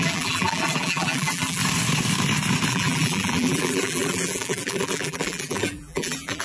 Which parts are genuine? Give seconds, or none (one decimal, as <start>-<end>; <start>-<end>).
1.6-2.7